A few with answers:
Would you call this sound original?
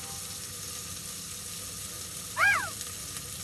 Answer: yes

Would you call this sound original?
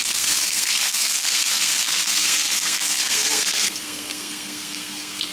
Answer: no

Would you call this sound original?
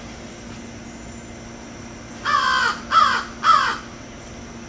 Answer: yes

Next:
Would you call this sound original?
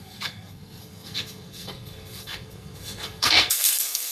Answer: no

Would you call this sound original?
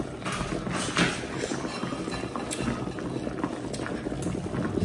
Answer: yes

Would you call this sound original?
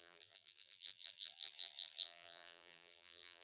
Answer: no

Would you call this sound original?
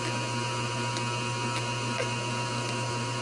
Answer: yes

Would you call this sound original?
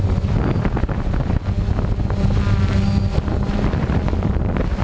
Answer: yes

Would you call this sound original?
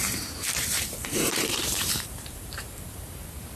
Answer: no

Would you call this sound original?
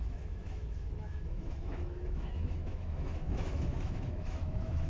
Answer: no